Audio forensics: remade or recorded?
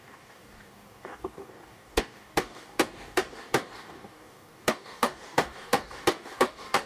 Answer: remade